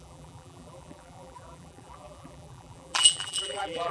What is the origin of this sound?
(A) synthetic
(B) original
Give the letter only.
A